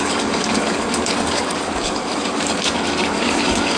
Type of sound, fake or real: fake